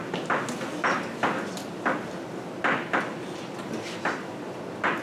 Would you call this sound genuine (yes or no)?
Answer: yes